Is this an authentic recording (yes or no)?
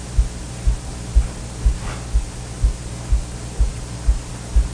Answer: yes